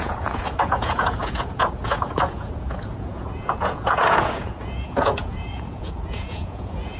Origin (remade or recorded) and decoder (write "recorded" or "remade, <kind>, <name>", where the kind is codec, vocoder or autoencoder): remade, vocoder, Vocos